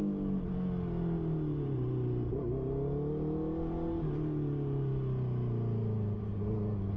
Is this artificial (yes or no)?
no